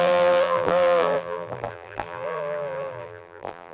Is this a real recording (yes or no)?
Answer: no